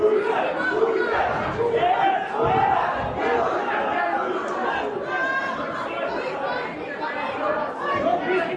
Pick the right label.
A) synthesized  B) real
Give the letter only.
B